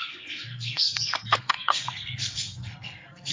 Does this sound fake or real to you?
fake